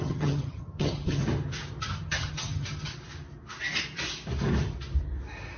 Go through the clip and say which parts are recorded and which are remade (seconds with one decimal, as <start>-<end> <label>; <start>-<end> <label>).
0.0-1.2 remade; 1.2-1.8 recorded; 1.8-2.9 remade; 2.9-5.6 recorded